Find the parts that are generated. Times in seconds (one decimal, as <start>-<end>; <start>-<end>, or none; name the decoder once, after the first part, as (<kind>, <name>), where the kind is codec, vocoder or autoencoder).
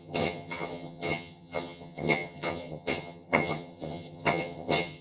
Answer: 0.0-5.0 (vocoder, HiFi-GAN)